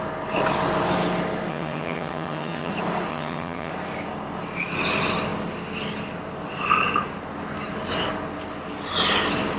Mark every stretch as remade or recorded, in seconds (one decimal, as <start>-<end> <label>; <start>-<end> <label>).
0.0-1.5 recorded; 1.5-2.7 remade; 2.7-3.1 recorded; 3.1-3.7 remade; 3.7-9.6 recorded